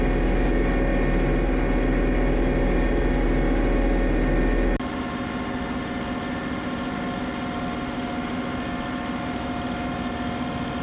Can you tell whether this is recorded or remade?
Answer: recorded